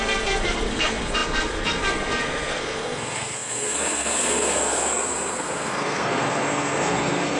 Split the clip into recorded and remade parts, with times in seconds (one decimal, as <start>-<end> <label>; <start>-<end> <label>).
0.0-7.4 remade

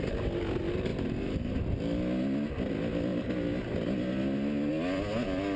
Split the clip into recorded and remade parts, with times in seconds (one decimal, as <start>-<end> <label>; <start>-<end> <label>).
0.0-0.9 recorded; 0.9-1.8 remade; 1.8-5.6 recorded

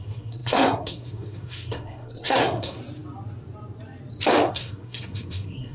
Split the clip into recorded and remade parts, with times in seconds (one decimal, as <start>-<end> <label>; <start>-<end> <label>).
0.0-2.8 remade; 2.8-4.5 recorded; 4.5-5.7 remade

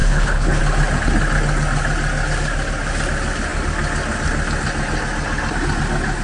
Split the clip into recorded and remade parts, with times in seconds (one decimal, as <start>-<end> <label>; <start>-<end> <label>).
0.0-0.6 remade; 0.6-6.2 recorded

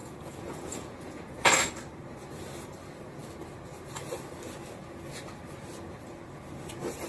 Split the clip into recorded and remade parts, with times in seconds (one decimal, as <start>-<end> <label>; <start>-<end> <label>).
0.0-1.5 remade; 1.5-7.1 recorded